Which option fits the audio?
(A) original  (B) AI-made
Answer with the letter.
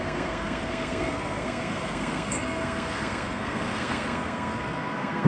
B